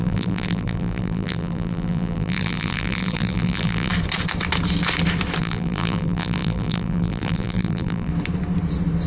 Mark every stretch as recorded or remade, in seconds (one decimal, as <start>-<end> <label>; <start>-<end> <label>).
0.0-3.9 remade; 3.9-5.4 recorded; 5.4-8.1 remade; 8.1-9.1 recorded